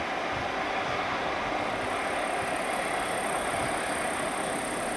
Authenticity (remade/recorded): recorded